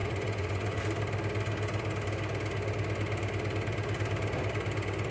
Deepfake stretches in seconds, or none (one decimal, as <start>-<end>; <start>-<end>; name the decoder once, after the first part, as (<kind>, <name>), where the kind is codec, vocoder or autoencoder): 0.0-0.8 (vocoder, Vocos)